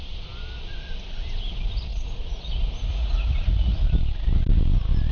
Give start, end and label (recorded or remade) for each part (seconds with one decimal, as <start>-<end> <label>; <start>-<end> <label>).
0.0-1.9 recorded; 1.9-2.5 remade; 2.5-2.9 recorded; 2.9-3.8 remade; 3.8-5.1 recorded